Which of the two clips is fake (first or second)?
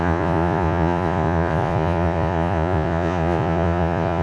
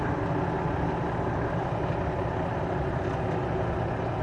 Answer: first